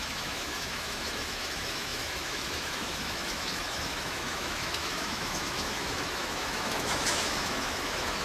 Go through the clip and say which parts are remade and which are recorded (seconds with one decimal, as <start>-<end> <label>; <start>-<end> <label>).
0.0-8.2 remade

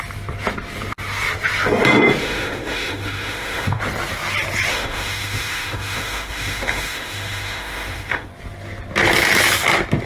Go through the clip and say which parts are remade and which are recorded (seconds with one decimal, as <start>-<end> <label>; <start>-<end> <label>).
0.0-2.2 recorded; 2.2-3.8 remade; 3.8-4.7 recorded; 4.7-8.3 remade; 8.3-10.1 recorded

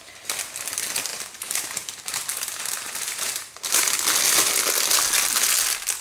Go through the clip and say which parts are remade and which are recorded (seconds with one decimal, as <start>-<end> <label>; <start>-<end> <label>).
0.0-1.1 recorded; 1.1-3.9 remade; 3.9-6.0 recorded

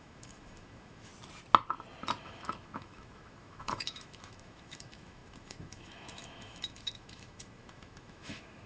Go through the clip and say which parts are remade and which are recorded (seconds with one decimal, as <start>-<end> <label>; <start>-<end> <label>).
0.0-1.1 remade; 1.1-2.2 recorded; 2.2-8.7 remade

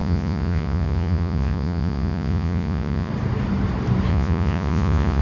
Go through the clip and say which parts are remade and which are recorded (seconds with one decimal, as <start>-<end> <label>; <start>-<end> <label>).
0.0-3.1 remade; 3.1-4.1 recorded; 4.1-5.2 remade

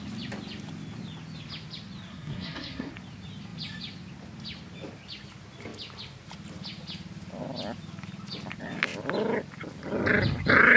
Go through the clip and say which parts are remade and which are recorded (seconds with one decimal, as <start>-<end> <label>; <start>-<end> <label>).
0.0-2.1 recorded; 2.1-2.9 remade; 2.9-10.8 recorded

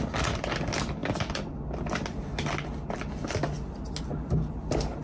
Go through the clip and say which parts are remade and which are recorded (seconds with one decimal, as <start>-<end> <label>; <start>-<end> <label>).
0.0-5.0 recorded

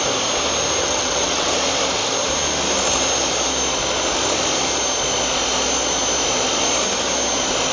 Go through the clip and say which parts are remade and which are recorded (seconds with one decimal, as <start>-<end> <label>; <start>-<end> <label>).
0.0-0.8 recorded; 0.8-1.5 remade; 1.5-7.7 recorded